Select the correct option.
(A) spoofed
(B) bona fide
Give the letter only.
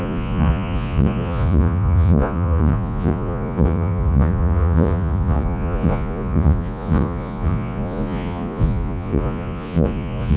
A